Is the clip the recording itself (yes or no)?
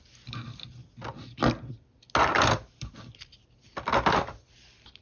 yes